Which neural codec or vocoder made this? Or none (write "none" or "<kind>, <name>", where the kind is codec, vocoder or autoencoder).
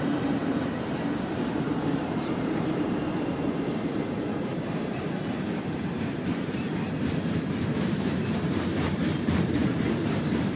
vocoder, BigVGAN v2